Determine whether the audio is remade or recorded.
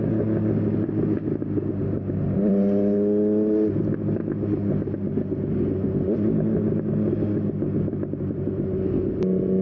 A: recorded